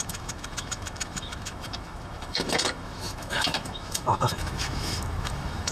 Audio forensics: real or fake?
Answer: fake